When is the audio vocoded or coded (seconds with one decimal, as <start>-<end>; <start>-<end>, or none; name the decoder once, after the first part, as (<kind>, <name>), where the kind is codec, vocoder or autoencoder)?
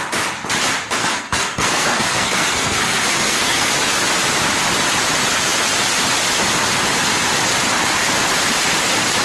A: 1.0-3.7 (codec, SNAC)